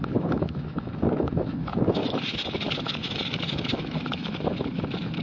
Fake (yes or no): yes